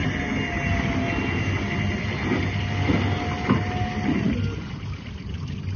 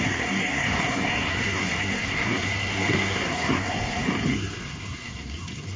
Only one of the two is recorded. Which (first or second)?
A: first